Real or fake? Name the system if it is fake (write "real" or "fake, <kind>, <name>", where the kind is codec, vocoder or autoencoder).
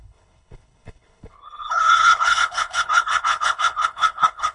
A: fake, codec, HILCodec